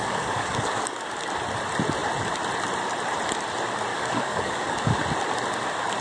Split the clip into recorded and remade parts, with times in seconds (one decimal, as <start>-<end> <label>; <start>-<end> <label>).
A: 0.0-1.1 remade; 1.1-3.9 recorded; 3.9-5.0 remade; 5.0-6.0 recorded